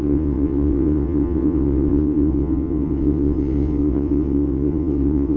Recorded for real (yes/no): no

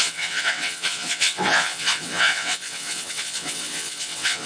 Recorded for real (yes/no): no